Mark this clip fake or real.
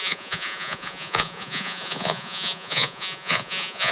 fake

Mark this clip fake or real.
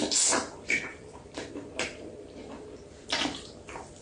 fake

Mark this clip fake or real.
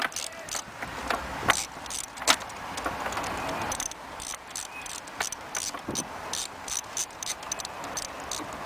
real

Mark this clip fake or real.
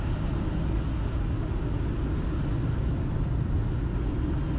real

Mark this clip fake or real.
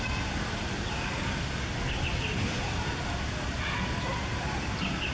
real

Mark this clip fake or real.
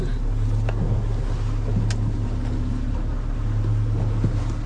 real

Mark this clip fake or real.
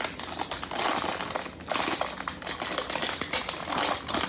real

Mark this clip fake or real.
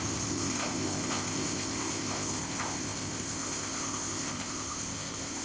fake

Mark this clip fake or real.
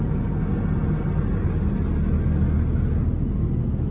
real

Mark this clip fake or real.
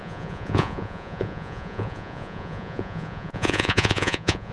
fake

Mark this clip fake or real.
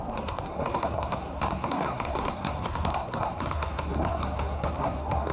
fake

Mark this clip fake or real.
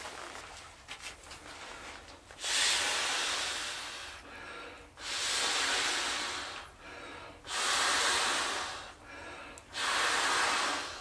real